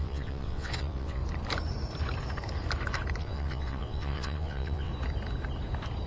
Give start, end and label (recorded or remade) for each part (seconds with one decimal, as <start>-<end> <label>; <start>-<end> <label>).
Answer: 0.0-1.2 remade; 1.2-3.2 recorded; 3.2-4.9 remade; 4.9-6.1 recorded